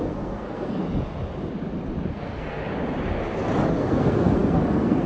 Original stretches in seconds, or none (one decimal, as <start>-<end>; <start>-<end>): 0.8-2.1; 2.6-3.7

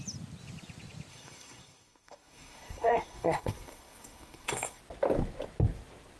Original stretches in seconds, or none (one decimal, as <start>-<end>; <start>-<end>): 0.0-1.1; 4.8-6.2

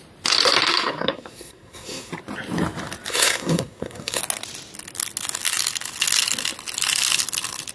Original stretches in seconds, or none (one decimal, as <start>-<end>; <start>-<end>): 0.0-0.7; 2.1-3.1; 4.2-7.7

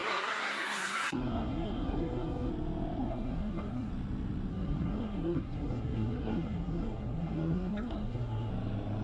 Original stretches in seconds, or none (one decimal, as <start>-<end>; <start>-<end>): 2.5-3.0; 3.9-4.5; 8.5-9.0